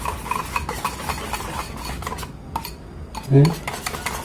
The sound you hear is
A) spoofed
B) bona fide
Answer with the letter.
B